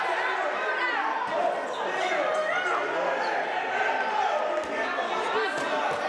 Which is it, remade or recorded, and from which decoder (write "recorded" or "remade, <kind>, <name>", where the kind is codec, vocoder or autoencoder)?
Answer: recorded